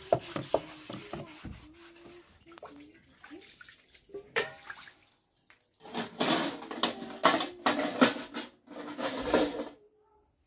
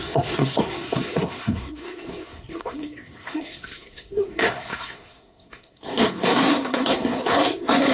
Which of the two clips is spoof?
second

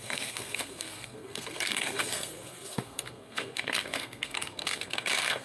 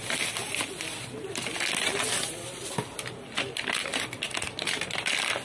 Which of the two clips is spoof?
first